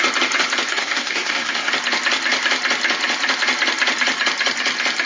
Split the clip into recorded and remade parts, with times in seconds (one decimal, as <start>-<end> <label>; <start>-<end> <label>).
0.0-0.7 recorded; 0.7-1.7 remade; 1.7-5.1 recorded